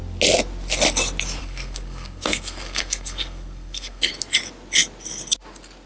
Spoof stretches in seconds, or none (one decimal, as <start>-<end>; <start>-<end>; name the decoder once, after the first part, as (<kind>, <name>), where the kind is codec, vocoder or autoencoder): 1.4-4.1 (codec, SNAC)